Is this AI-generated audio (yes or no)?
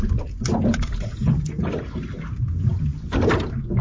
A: no